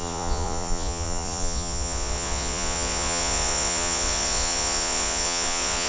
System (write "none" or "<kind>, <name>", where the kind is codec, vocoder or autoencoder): vocoder, Vocos